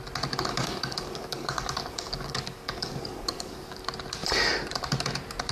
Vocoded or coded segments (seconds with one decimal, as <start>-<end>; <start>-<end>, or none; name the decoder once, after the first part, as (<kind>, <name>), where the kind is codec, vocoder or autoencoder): 0.5-3.8 (codec, DAC)